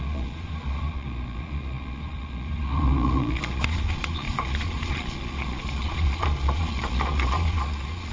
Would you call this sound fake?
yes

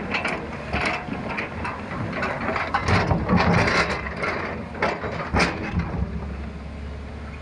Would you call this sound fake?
no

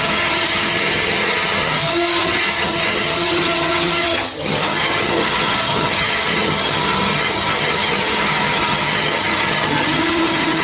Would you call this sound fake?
yes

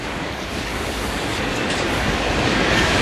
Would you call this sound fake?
yes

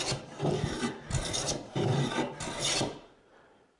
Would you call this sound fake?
no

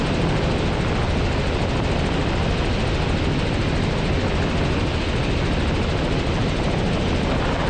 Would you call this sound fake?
no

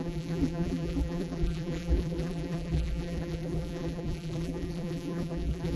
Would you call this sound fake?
yes